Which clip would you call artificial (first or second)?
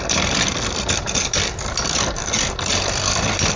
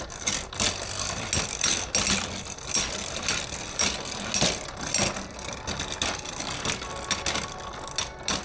first